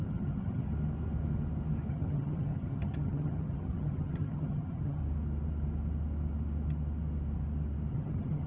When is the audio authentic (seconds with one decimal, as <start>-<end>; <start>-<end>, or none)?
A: 0.7-1.9; 5.0-7.9